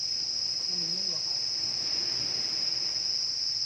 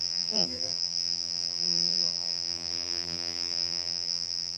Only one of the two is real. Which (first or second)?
first